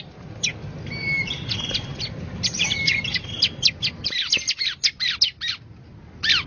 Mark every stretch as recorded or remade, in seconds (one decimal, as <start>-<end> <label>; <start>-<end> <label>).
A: 0.0-1.9 recorded; 1.9-3.7 remade; 3.7-6.5 recorded